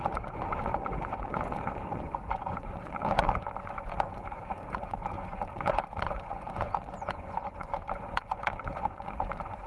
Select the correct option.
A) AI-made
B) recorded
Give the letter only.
A